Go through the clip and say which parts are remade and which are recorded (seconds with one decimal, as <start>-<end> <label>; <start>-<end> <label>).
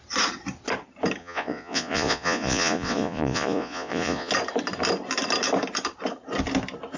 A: 0.0-1.2 recorded; 1.2-4.3 remade; 4.3-7.0 recorded